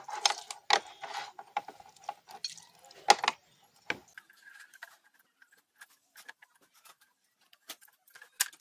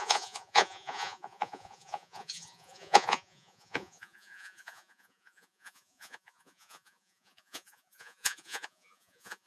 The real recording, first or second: first